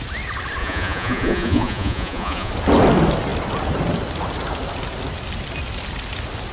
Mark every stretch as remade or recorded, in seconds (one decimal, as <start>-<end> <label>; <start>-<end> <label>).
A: 0.0-0.6 recorded; 0.6-2.5 remade; 2.5-6.5 recorded